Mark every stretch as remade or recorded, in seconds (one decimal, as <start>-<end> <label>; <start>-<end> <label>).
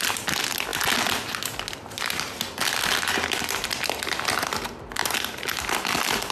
0.0-5.0 recorded; 5.0-6.3 remade